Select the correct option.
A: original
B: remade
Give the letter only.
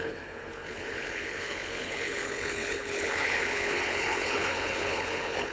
B